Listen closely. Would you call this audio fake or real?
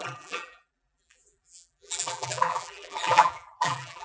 fake